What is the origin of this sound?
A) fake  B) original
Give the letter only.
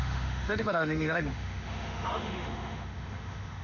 A